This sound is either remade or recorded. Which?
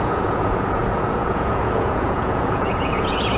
remade